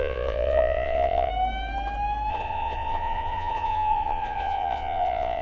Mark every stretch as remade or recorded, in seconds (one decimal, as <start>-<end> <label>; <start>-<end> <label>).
0.0-1.3 remade; 1.3-2.3 recorded; 2.3-5.4 remade